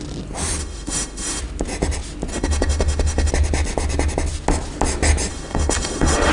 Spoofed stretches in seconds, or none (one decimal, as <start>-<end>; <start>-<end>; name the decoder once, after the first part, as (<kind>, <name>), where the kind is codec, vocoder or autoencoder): 0.6-1.4 (autoencoder, DAC-VAE); 2.3-3.3; 5.3-6.3